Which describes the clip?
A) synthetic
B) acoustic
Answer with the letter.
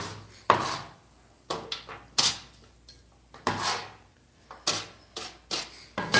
B